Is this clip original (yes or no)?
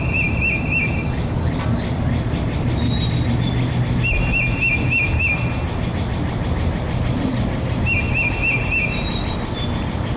yes